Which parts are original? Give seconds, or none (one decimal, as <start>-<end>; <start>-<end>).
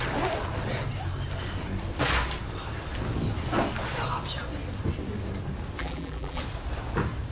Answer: 0.0-5.8; 6.4-7.3